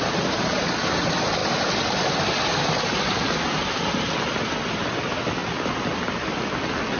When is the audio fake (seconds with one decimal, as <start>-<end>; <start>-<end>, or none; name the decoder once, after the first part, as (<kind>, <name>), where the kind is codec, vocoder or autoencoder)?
none